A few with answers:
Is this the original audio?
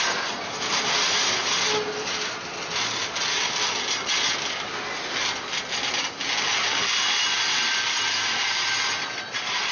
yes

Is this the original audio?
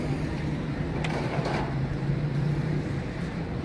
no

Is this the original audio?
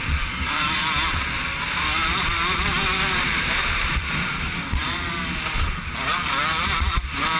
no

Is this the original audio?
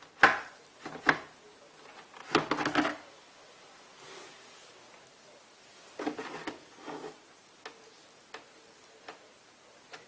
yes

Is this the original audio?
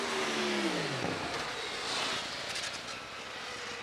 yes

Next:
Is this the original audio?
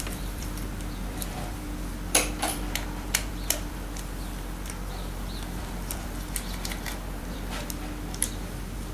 no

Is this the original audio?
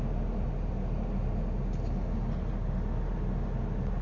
yes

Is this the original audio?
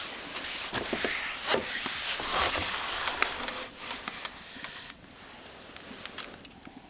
no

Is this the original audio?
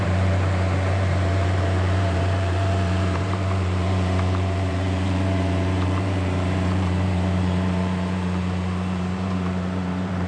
no